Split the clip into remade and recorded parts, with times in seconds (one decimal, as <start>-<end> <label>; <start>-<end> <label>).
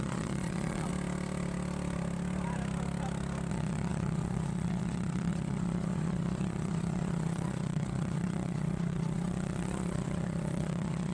0.0-0.9 remade; 0.9-3.5 recorded; 3.5-11.1 remade